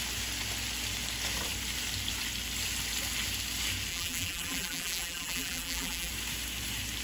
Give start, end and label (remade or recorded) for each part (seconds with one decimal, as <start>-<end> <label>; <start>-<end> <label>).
0.0-3.9 recorded; 3.9-6.1 remade; 6.1-7.0 recorded

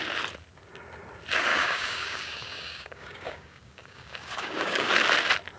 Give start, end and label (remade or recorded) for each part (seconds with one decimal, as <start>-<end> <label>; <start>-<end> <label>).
0.0-1.5 recorded; 1.5-4.9 remade; 4.9-5.6 recorded

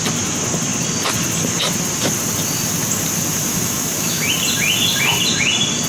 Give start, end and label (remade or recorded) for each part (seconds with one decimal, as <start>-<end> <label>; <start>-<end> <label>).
0.0-3.5 recorded; 3.5-4.2 remade; 4.2-5.9 recorded